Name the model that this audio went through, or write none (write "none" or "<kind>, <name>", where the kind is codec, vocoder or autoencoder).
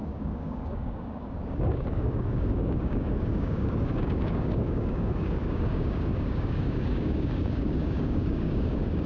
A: codec, DAC